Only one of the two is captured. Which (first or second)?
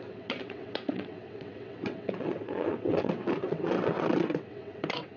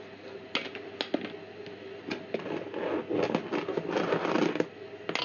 second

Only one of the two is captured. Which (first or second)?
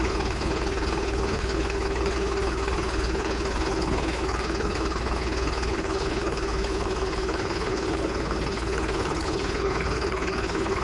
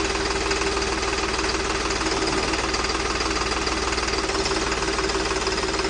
second